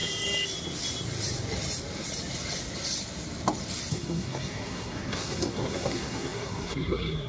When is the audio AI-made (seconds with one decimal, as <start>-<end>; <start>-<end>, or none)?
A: 3.9-7.3